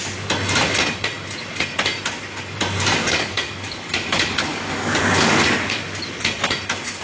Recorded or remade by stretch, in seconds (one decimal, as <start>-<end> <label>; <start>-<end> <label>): 0.0-3.0 recorded; 3.0-5.8 remade; 5.8-7.0 recorded

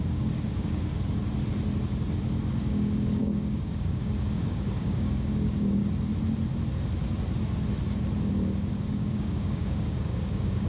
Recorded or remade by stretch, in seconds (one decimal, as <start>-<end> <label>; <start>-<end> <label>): 0.0-0.9 remade; 0.9-2.5 recorded; 2.5-5.8 remade; 5.8-8.9 recorded; 8.9-10.7 remade

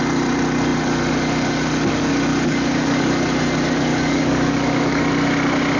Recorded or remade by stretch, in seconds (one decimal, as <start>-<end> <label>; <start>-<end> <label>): 0.0-2.3 recorded; 2.3-3.1 remade; 3.1-3.9 recorded; 3.9-5.0 remade; 5.0-5.8 recorded

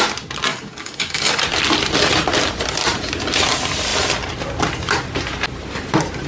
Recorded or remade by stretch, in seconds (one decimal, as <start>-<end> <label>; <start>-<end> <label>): 0.0-0.5 recorded; 0.5-1.4 remade; 1.4-6.3 recorded

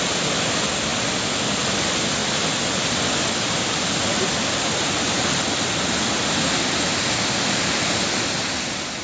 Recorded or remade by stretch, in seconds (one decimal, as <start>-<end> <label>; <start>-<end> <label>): 0.0-9.0 recorded

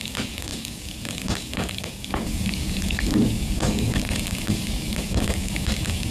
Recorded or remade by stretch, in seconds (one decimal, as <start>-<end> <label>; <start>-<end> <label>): 0.0-6.1 remade

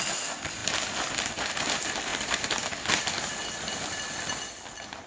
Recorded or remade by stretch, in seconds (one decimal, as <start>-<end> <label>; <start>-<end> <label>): 0.0-5.1 recorded